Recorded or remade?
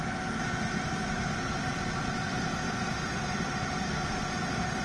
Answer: recorded